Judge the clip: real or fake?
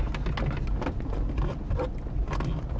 real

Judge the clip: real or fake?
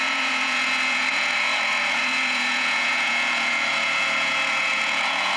fake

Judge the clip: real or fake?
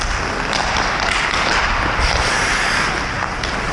real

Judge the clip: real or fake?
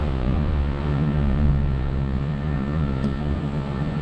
fake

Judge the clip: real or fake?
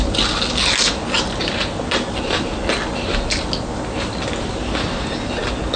real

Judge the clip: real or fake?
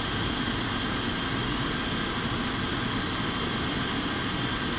real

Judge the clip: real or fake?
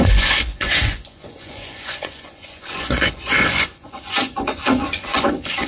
fake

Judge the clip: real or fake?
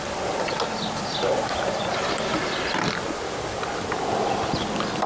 real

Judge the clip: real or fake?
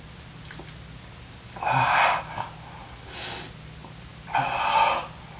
real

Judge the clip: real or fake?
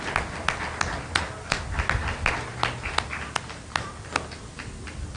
real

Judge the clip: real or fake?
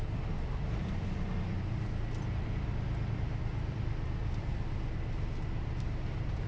real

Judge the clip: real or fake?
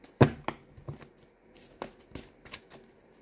real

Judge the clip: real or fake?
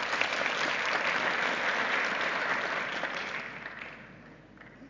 real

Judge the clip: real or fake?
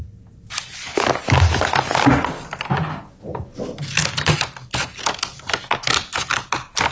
real